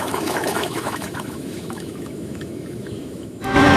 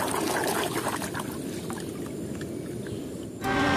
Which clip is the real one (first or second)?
second